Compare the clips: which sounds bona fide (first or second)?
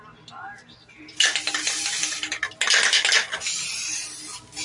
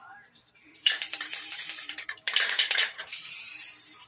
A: first